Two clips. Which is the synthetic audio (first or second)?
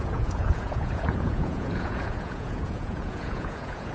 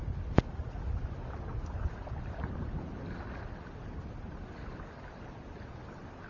first